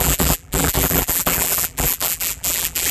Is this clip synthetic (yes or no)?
yes